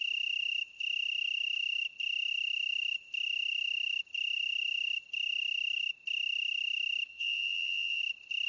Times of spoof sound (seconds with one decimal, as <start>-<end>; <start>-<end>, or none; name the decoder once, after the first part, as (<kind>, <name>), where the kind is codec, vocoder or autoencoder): 7.1-8.0 (vocoder, Vocos)